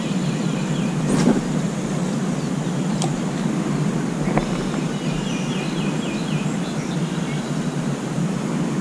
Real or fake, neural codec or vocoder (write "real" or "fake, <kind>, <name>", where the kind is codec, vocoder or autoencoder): real